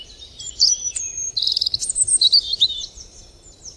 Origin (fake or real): fake